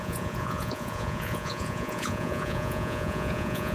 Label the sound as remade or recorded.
remade